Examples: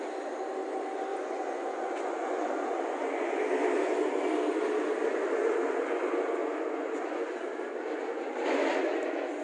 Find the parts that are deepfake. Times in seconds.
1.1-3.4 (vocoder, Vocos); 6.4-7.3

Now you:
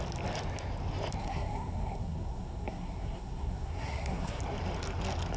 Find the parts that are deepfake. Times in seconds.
1.2-4.4 (codec, SNAC)

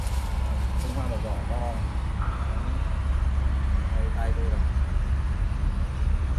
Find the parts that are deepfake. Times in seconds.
none

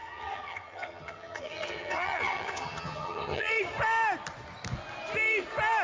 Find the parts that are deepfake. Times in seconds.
0.0-3.5 (vocoder, HiFi-GAN)

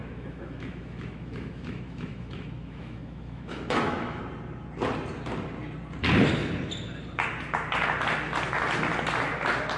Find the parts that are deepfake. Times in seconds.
0.0-4.2 (autoencoder, DAC-VAE)

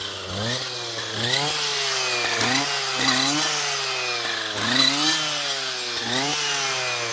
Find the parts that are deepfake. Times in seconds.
none